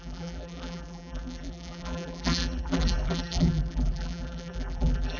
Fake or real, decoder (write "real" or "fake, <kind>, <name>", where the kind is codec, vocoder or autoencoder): fake, vocoder, BigVGAN v2